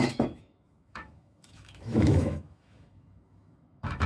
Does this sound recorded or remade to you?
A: remade